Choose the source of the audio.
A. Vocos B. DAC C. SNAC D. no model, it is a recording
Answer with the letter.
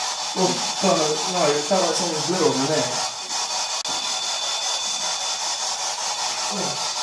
D